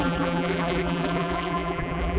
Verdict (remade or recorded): remade